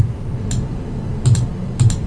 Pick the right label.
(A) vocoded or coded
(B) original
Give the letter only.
B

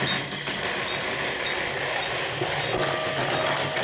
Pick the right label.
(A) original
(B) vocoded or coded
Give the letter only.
A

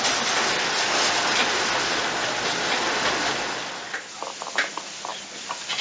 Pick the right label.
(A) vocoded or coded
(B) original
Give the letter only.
B